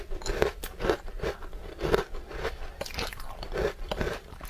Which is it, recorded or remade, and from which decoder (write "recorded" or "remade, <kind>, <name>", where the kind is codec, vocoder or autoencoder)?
recorded